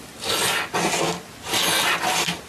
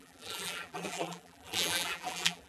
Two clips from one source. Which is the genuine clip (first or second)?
first